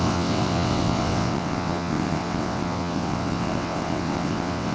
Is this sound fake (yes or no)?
yes